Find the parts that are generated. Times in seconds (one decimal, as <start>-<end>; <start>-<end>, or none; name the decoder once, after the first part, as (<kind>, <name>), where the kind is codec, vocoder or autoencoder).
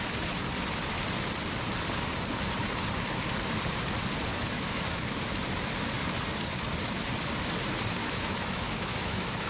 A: 4.3-4.8 (autoencoder, DAC-VAE); 8.0-9.5